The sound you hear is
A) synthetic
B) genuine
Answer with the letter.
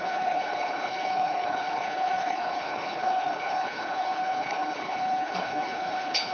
A